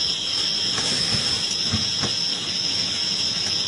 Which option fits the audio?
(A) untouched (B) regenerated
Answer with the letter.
A